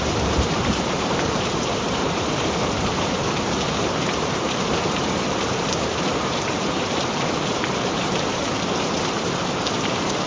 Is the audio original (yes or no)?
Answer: no